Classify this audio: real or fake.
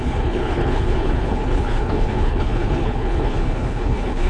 fake